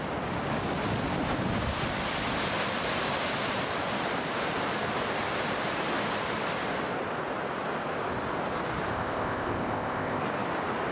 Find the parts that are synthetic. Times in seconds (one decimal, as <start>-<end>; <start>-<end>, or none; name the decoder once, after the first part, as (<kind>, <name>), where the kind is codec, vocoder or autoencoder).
8.9-10.2 (codec, ZipCodec)